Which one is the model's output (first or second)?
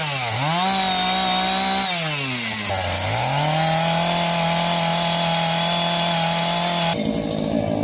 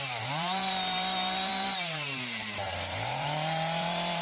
second